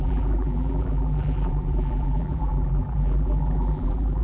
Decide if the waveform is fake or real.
fake